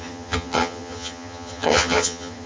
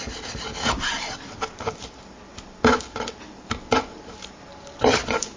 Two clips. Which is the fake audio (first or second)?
first